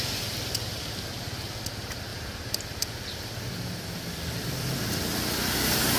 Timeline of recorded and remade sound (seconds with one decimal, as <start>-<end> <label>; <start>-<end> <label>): 0.0-2.1 recorded; 2.1-5.5 remade; 5.5-6.0 recorded